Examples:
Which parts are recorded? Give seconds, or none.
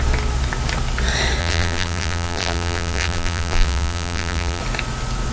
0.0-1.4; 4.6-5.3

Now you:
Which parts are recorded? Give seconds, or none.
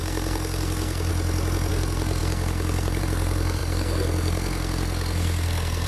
1.1-1.7